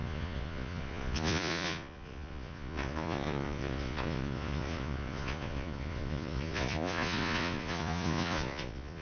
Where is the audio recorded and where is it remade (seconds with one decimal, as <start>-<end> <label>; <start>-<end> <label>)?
0.0-9.0 remade